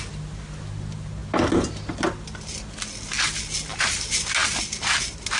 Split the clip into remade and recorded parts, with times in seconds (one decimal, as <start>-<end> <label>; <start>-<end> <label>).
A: 0.0-5.4 recorded